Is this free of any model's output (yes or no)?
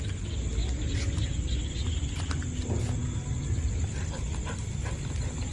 yes